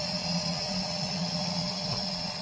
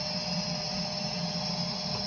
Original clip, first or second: second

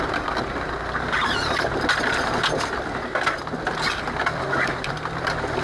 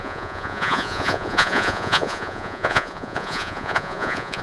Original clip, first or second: first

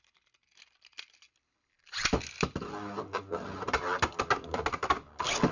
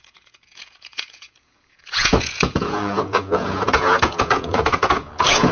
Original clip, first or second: first